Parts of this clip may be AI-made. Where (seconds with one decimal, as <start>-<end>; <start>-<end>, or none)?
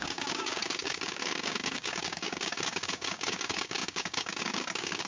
0.0-5.1